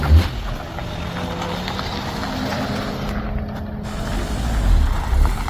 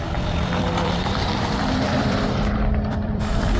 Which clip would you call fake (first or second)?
second